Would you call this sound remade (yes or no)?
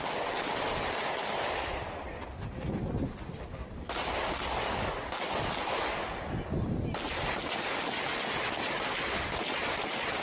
no